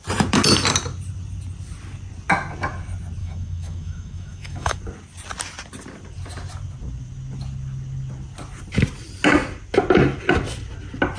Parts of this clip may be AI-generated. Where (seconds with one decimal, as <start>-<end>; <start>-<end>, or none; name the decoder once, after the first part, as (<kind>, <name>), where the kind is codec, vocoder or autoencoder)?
3.2-4.8 (autoencoder, DAC-VAE)